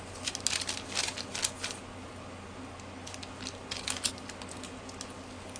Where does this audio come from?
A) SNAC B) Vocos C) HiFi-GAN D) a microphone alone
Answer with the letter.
D